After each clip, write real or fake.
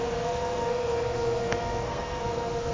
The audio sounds fake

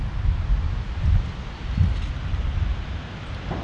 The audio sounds real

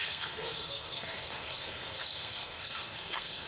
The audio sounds fake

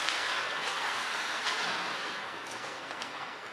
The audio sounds fake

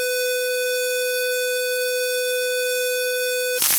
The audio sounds fake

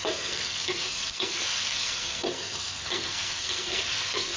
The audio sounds fake